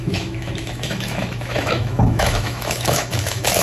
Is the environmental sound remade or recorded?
remade